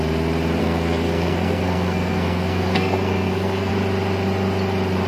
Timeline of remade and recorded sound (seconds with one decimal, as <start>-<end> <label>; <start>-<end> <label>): 0.0-0.6 recorded; 0.6-3.7 remade; 3.7-5.1 recorded